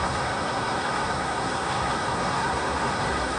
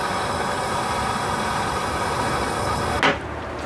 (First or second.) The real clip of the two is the second